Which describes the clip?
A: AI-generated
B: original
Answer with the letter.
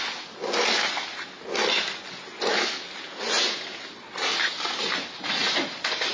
B